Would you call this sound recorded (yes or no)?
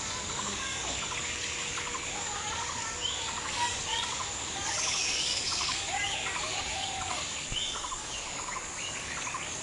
no